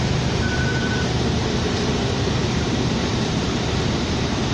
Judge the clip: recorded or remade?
remade